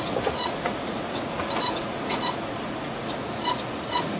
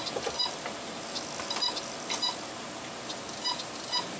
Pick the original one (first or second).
second